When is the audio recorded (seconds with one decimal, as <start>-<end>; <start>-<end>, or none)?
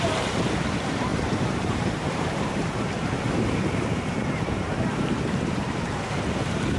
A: none